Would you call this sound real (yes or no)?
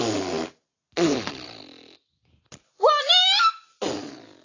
yes